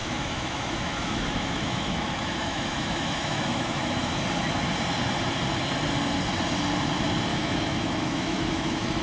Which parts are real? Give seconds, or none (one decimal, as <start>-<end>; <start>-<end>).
4.2-7.3